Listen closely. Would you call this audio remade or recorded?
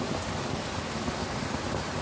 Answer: recorded